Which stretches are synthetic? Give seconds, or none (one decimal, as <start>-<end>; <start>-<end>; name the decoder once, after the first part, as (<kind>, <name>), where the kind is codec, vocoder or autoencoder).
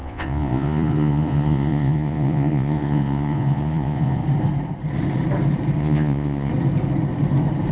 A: 0.0-4.2 (vocoder, Vocos); 5.8-6.5